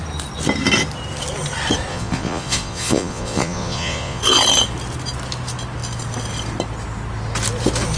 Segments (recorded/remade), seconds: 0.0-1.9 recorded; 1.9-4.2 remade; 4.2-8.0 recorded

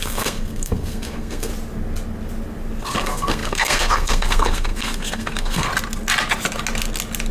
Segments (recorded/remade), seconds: 0.0-1.5 remade; 1.5-2.8 recorded; 2.8-5.7 remade; 5.7-7.3 recorded

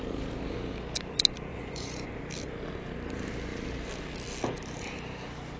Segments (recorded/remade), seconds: 0.0-1.5 recorded; 1.5-2.2 remade; 2.2-5.6 recorded

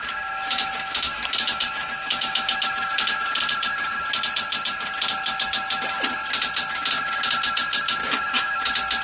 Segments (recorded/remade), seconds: 0.0-3.3 remade; 3.3-8.0 recorded; 8.0-8.6 remade; 8.6-9.0 recorded

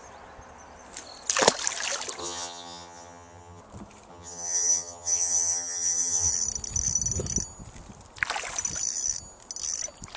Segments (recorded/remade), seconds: 0.0-2.2 recorded; 2.2-3.6 remade; 3.6-4.1 recorded; 4.1-6.3 remade; 6.3-10.2 recorded

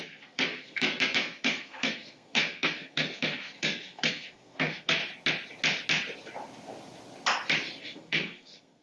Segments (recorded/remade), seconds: 0.0-5.0 remade; 5.0-7.8 recorded; 7.8-8.8 remade

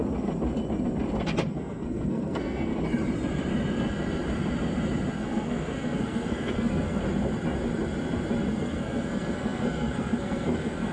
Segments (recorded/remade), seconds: 0.0-1.5 recorded; 1.5-2.7 remade; 2.7-5.1 recorded; 5.1-7.0 remade; 7.0-8.5 recorded; 8.5-10.9 remade

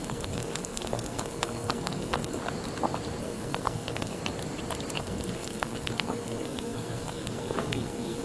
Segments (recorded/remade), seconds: 0.0-2.4 remade; 2.4-3.2 recorded; 3.2-4.2 remade; 4.2-5.0 recorded; 5.0-8.2 remade